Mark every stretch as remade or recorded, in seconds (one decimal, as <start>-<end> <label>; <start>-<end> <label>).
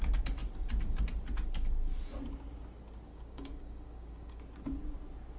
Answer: 0.0-3.1 recorded; 3.1-4.4 remade; 4.4-5.4 recorded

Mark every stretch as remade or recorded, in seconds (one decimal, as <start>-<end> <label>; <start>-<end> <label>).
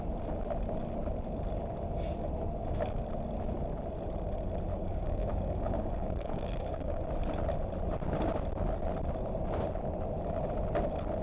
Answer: 0.0-4.7 recorded; 4.7-7.0 remade; 7.0-11.2 recorded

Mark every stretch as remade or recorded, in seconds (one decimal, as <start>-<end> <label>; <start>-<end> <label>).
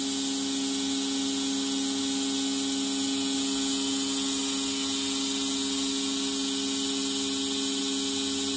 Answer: 0.0-8.6 recorded